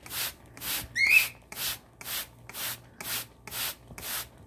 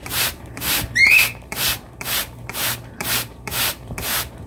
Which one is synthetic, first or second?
second